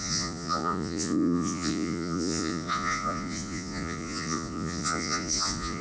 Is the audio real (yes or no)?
no